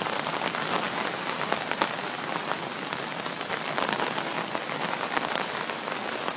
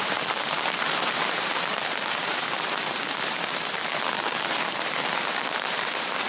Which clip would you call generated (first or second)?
second